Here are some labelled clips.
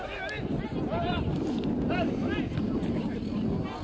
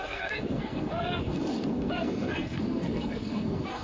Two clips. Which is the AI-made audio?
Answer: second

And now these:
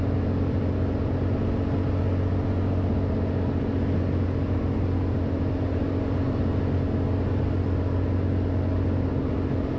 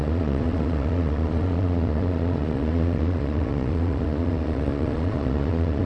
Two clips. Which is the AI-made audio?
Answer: second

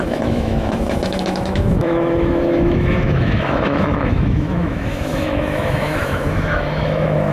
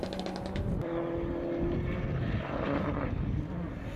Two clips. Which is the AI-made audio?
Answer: first